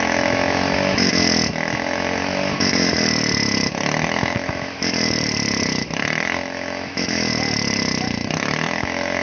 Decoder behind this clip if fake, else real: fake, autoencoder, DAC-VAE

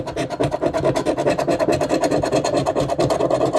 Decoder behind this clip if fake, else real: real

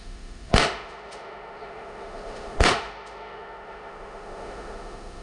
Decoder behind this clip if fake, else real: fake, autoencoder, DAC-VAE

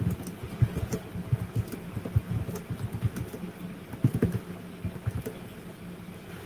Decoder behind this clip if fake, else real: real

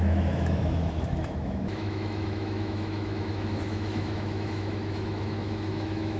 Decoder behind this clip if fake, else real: fake, autoencoder, DAC-VAE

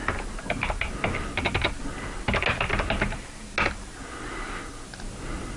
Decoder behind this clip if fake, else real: real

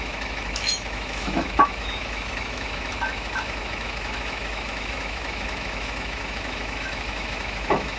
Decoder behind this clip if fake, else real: fake, autoencoder, DAC-VAE